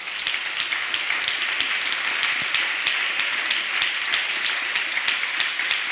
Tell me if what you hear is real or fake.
real